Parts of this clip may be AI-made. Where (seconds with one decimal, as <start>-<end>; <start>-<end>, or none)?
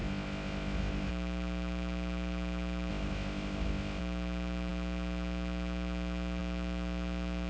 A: 0.0-1.1; 2.9-4.0